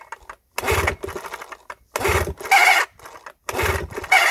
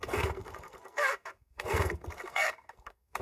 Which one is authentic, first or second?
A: first